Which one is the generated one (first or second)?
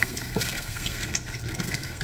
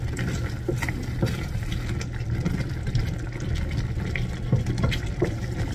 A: first